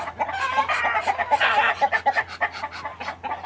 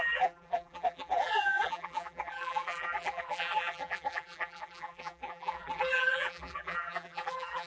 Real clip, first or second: first